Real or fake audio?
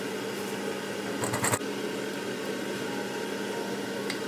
real